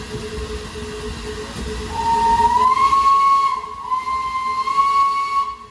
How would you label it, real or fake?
real